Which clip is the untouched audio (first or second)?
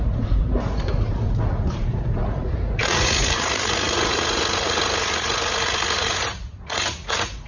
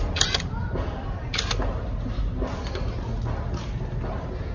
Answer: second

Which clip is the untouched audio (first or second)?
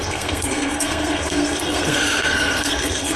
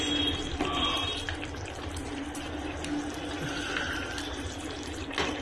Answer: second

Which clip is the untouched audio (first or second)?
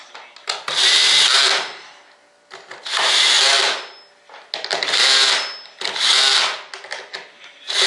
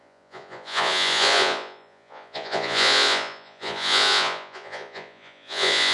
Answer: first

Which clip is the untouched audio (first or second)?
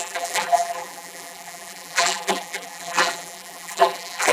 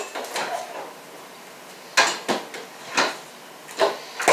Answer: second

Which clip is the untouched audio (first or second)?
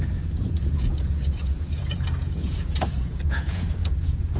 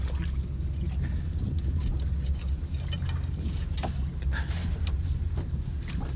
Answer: second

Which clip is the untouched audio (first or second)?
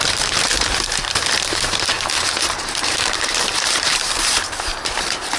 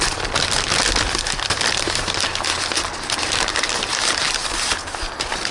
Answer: second